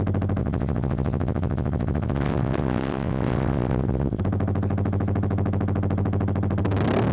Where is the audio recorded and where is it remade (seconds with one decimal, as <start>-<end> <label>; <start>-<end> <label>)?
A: 0.0-0.4 recorded; 0.4-4.2 remade; 4.2-7.1 recorded